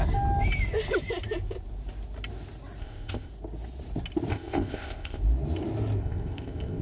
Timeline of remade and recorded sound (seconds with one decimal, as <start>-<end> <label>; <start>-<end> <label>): 0.0-2.8 recorded; 2.8-3.3 remade; 3.3-4.3 recorded; 4.3-5.2 remade; 5.2-6.0 recorded; 6.0-6.8 remade